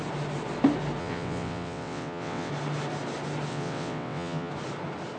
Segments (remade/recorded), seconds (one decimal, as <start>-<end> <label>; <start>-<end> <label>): 0.0-1.0 recorded; 1.0-2.5 remade; 2.5-3.5 recorded; 3.5-4.5 remade; 4.5-5.2 recorded